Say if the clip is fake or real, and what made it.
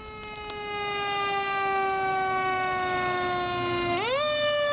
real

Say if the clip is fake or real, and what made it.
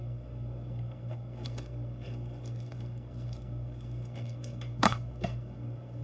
fake, codec, SNAC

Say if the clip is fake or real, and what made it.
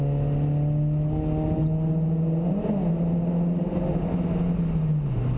real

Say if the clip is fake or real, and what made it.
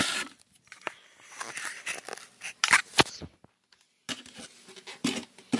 real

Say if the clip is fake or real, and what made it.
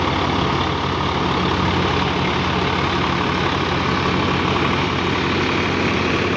real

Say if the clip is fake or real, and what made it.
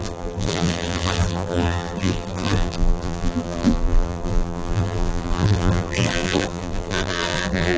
fake, vocoder, BigVGAN v2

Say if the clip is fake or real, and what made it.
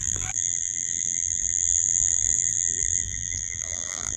fake, vocoder, BigVGAN v2